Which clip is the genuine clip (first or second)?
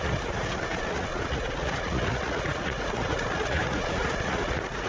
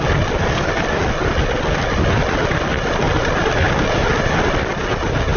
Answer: second